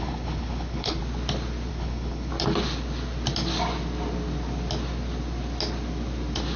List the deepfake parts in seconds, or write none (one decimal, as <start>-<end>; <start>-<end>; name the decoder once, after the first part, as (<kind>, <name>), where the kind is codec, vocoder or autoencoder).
0.0-1.0 (codec, HILCodec); 1.7-2.3